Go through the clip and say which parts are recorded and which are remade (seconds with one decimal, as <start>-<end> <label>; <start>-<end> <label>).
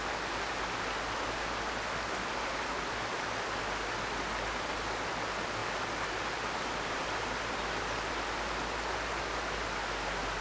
0.0-10.4 recorded